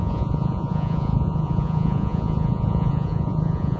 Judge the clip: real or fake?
fake